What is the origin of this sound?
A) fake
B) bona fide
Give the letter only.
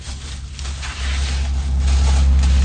B